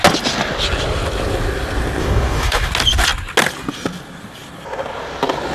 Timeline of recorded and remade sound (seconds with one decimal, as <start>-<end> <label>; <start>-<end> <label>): 0.0-2.0 recorded; 2.0-2.7 remade; 2.7-5.5 recorded

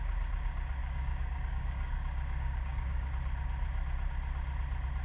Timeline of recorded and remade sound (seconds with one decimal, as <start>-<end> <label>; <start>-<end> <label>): 0.0-0.8 recorded; 0.8-3.1 remade; 3.1-5.0 recorded

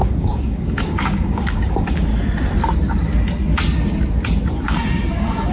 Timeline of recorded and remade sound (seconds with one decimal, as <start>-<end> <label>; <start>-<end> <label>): 0.0-2.1 remade; 2.1-5.5 recorded